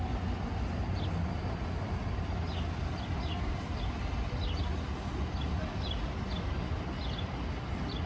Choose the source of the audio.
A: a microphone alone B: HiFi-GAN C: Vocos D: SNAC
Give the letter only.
A